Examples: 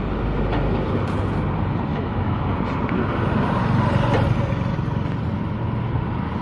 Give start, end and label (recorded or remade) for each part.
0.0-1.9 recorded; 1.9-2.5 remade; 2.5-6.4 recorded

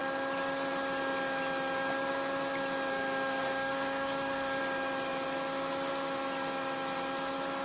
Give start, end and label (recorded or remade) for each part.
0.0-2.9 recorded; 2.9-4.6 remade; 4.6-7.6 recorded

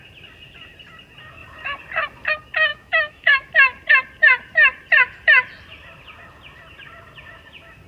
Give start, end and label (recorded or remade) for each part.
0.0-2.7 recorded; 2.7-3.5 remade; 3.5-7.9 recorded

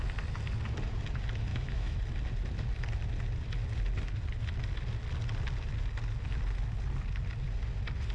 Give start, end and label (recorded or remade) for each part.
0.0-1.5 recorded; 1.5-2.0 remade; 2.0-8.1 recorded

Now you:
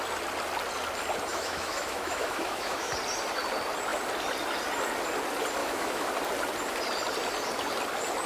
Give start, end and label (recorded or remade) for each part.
0.0-1.3 recorded; 1.3-2.9 remade; 2.9-5.6 recorded; 5.6-6.1 remade; 6.1-8.3 recorded

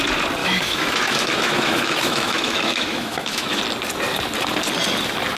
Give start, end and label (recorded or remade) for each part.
0.0-0.4 recorded; 0.4-3.6 remade; 3.6-5.4 recorded